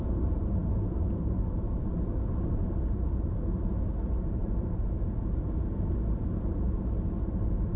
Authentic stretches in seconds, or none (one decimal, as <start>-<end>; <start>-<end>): none